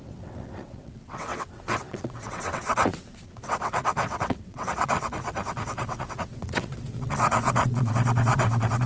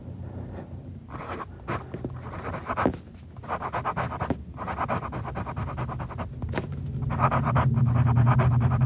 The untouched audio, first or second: second